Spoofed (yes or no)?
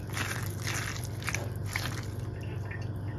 no